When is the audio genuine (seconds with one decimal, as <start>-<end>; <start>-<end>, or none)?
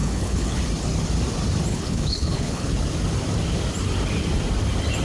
0.6-1.7; 2.7-5.0